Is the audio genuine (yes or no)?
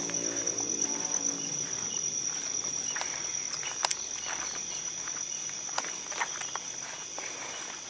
yes